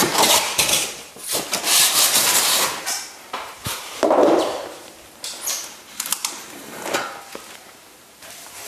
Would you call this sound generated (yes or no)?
yes